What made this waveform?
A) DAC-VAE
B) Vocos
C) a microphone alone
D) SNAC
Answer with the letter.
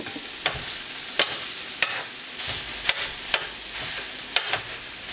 C